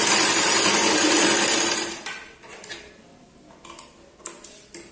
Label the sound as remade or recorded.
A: recorded